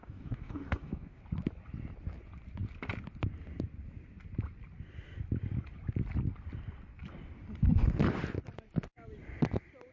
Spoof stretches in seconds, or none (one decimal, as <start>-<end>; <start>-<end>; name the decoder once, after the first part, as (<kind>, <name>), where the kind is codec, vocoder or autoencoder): 0.0-1.2 (codec, DAC)